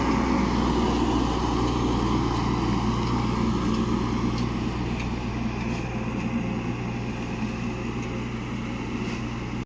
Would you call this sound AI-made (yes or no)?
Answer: no